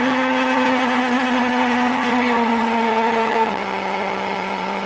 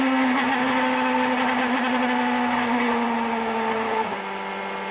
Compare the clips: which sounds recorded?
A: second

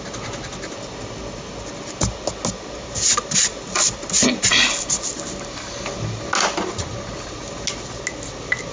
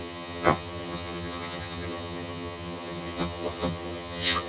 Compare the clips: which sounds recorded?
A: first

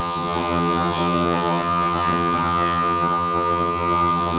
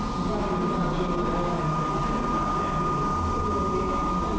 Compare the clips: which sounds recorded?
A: second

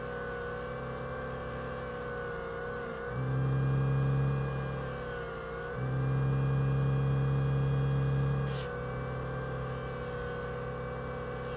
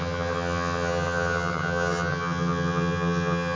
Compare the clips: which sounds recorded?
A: first